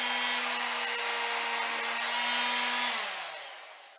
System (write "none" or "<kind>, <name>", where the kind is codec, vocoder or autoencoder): none